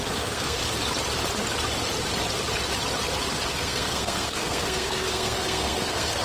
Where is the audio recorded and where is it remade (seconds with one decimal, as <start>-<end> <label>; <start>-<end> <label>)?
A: 0.0-0.6 remade; 0.6-3.5 recorded; 3.5-6.2 remade